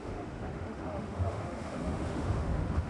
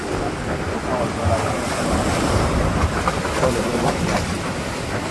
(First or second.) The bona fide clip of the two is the second